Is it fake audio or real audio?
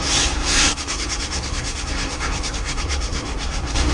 fake